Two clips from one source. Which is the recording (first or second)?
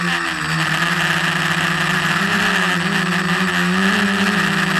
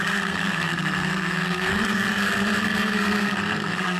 first